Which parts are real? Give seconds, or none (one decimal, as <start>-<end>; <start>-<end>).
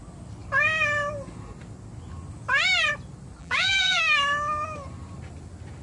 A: 0.0-3.4; 4.0-5.8